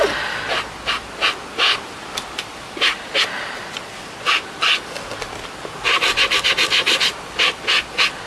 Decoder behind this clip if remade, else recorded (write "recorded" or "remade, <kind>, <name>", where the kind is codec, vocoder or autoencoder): recorded